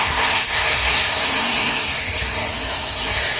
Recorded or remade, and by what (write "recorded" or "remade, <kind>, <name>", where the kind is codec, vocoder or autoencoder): remade, codec, SNAC